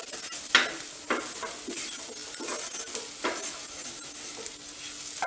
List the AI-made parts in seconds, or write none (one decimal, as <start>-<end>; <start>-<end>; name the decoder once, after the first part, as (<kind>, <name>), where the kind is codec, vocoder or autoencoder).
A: none